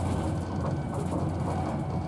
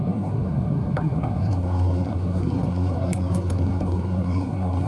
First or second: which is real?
first